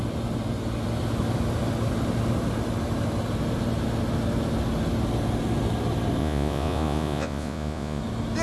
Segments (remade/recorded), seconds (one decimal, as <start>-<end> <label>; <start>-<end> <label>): 0.0-6.2 recorded; 6.2-8.0 remade; 8.0-8.4 recorded